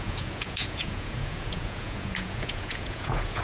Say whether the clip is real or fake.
fake